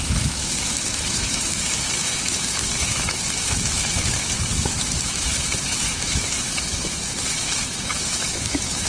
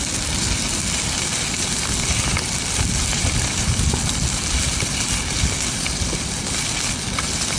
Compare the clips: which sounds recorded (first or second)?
second